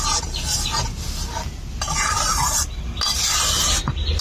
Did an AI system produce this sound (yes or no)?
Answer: no